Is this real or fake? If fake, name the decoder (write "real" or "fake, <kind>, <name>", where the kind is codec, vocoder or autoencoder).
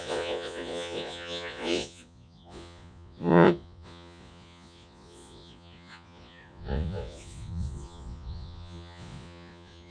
fake, vocoder, Vocos